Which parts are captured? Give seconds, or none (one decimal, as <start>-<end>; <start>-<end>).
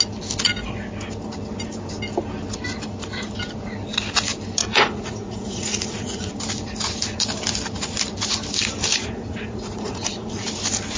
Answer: 0.0-4.6; 6.3-9.0; 10.4-11.0